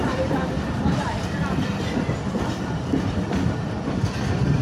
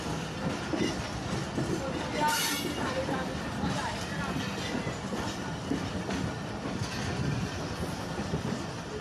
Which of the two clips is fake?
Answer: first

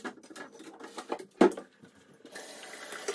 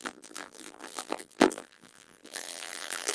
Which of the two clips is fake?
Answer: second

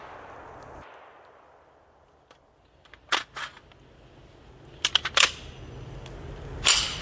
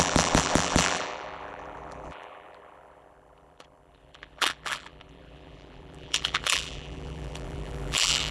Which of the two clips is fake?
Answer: second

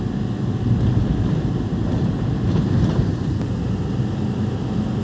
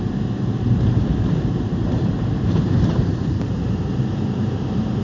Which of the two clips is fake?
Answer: second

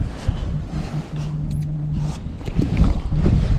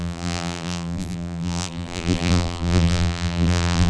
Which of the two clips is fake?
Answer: second